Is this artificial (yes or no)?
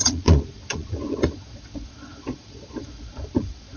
yes